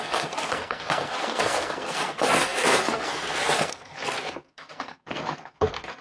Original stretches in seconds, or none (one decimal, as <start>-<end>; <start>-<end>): none